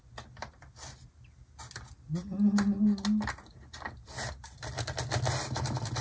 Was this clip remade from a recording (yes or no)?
no